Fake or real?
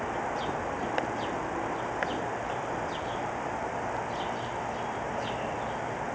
real